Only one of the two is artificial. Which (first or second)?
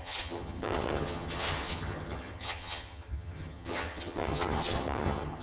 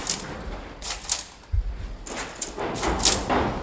first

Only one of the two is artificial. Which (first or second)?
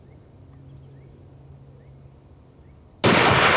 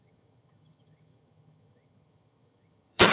second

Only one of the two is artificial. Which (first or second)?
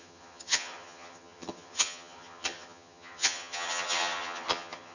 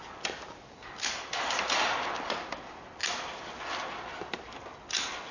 first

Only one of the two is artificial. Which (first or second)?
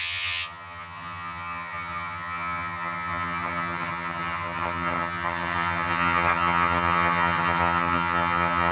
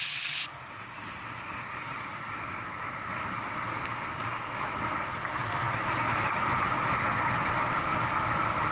first